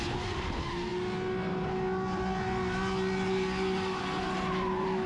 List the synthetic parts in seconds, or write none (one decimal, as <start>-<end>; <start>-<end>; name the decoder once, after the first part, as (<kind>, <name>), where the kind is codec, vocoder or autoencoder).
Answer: none